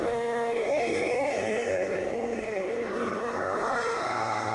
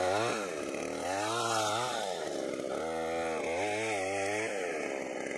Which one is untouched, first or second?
second